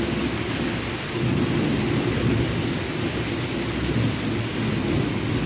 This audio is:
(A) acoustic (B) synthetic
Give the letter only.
A